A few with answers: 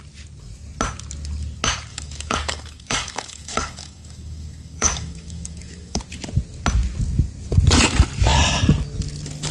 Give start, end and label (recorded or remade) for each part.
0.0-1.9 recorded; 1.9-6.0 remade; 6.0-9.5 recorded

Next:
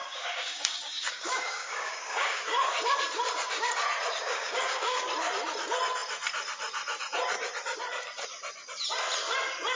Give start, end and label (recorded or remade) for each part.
0.0-2.4 remade; 2.4-4.2 recorded; 4.2-5.1 remade; 5.1-9.7 recorded

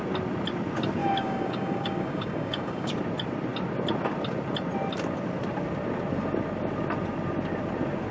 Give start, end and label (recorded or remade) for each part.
0.0-1.0 recorded; 1.0-2.9 remade; 2.9-8.1 recorded

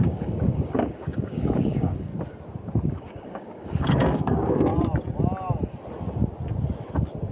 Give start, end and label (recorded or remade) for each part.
0.0-2.1 remade; 2.1-2.9 recorded; 2.9-4.7 remade; 4.7-7.3 recorded

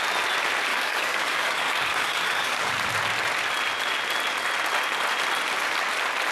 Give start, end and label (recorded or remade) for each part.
0.0-0.7 recorded; 0.7-2.7 remade; 2.7-6.3 recorded

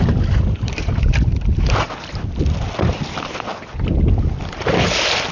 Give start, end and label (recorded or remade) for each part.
0.0-5.3 recorded

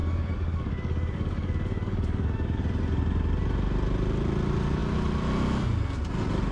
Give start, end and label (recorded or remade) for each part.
0.0-2.6 remade; 2.6-6.5 recorded

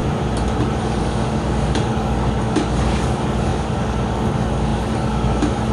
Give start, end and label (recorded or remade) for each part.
0.0-1.0 recorded; 1.0-5.7 remade